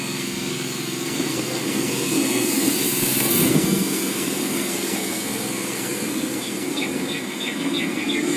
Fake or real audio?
fake